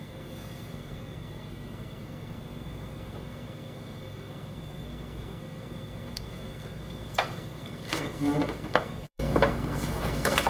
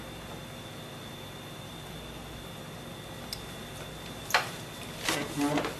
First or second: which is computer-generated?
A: first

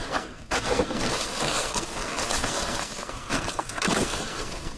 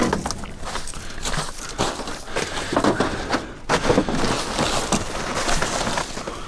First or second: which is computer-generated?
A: first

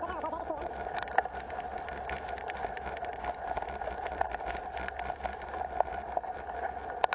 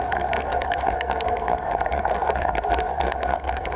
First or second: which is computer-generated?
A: second